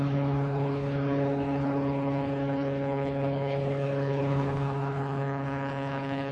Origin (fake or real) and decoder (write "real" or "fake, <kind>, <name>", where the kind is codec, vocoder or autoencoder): fake, codec, HILCodec